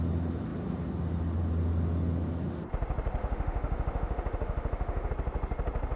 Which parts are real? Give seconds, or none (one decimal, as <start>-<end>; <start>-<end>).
0.0-3.2; 5.1-6.0